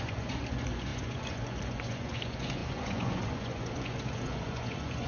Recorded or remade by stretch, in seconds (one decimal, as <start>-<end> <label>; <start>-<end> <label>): 0.0-5.1 remade